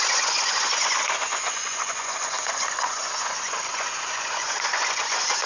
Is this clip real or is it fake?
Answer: fake